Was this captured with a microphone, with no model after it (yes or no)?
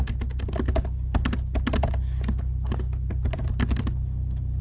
yes